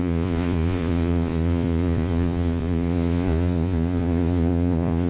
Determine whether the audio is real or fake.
fake